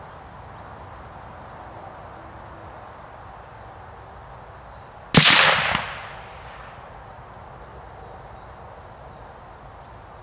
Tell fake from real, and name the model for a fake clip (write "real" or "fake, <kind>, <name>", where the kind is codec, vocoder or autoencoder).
real